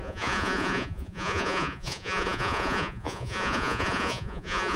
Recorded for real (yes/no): no